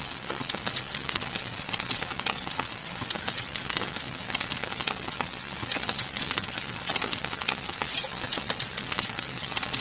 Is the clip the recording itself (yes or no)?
no